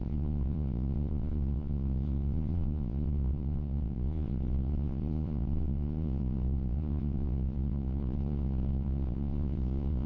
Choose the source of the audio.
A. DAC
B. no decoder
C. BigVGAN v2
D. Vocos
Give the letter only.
D